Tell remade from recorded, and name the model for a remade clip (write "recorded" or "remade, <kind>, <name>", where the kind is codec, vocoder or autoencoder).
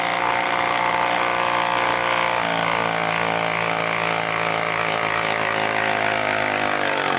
recorded